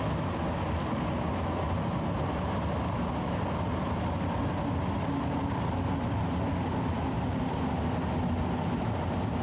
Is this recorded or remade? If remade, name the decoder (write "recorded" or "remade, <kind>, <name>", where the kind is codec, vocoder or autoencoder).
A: recorded